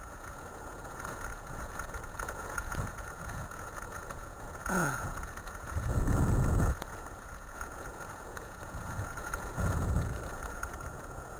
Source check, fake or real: fake